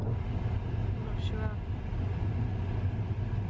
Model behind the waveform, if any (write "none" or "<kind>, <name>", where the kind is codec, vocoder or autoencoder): none